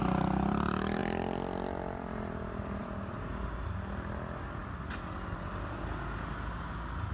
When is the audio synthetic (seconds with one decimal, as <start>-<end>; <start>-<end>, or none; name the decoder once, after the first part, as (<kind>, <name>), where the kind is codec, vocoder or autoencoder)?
none